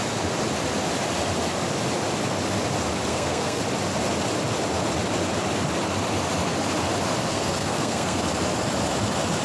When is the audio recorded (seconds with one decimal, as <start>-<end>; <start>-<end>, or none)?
0.0-3.1; 3.6-7.3; 8.2-9.4